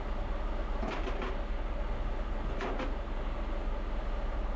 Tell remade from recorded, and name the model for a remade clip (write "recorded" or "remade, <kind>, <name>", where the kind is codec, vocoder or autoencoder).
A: recorded